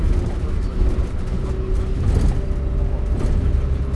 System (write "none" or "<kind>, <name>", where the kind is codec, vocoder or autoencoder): none